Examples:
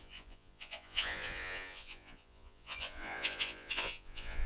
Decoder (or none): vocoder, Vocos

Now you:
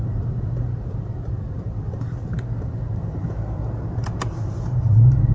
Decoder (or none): vocoder, BigVGAN v2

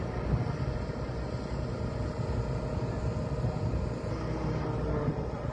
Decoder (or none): none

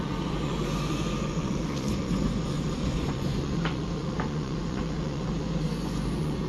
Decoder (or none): vocoder, Vocos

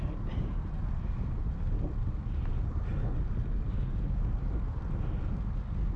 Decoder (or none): none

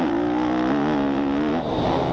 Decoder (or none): none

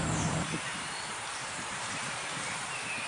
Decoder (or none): vocoder, BigVGAN v2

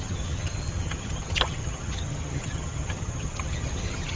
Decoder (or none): vocoder, HiFi-GAN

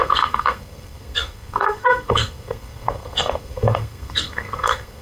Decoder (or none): codec, SNAC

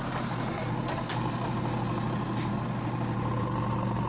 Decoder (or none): none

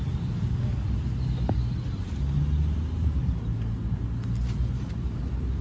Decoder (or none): none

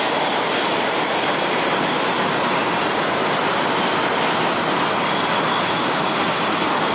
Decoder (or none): none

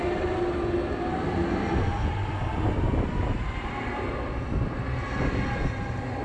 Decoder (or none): none